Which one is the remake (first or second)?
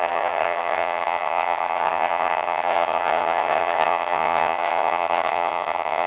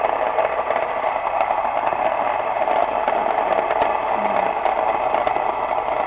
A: first